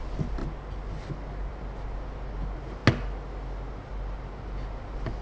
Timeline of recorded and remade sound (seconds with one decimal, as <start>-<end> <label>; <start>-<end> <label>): 0.0-5.2 recorded